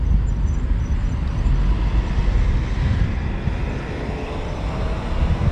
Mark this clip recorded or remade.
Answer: recorded